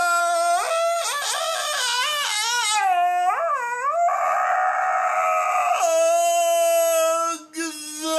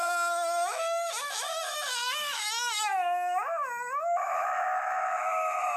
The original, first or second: first